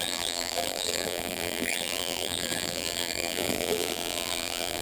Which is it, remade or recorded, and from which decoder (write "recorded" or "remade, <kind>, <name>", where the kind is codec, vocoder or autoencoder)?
remade, vocoder, BigVGAN v2